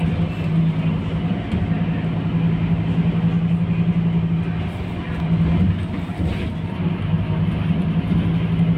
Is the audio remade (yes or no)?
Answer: no